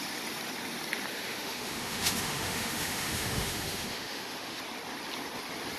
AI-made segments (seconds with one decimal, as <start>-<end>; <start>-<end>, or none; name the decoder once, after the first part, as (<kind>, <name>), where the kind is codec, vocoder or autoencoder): 1.1-4.6 (autoencoder, DAC-VAE)